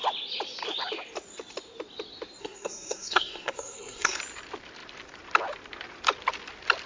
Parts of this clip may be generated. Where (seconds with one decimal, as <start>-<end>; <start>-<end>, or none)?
2.4-4.2